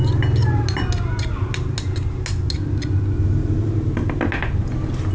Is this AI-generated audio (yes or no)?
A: no